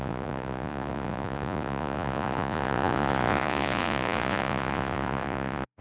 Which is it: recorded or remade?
remade